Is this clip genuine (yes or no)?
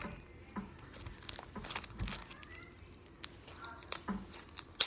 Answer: yes